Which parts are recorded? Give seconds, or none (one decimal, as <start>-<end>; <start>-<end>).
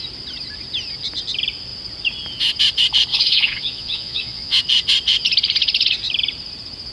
0.0-3.1; 4.6-6.9